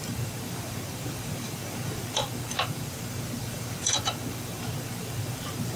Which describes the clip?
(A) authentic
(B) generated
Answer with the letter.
B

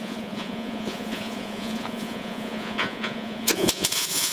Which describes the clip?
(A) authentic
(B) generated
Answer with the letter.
B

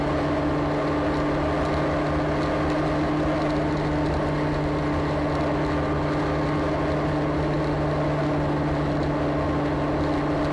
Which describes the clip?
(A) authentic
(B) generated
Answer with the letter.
A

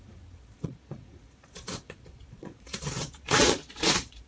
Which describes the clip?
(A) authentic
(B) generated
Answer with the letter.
B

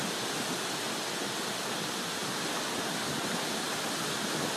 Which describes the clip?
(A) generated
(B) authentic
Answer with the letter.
B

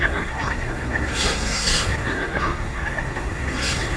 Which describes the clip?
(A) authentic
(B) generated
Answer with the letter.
B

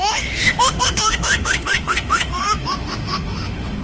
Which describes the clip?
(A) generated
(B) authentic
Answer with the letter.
A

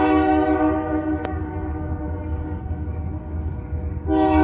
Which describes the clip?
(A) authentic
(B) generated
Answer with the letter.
B